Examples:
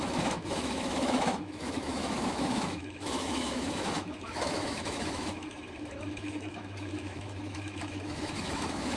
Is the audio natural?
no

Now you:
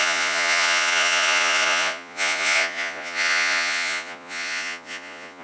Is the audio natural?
no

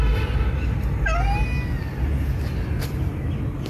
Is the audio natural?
yes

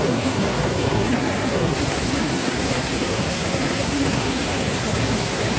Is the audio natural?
no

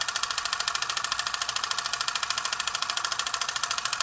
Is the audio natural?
yes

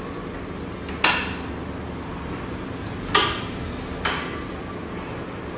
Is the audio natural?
yes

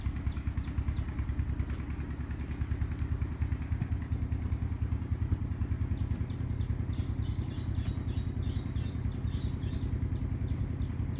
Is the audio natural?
yes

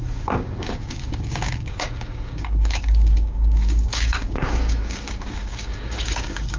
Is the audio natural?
no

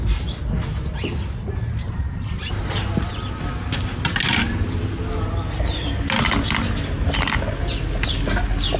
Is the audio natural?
yes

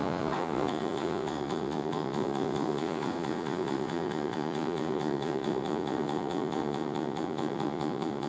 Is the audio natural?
no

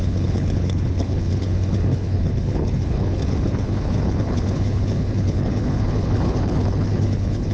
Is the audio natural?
no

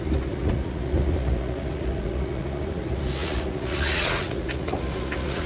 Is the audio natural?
no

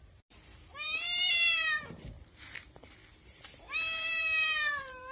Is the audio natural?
no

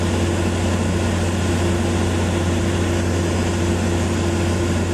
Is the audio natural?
yes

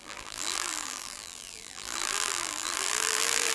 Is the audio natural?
no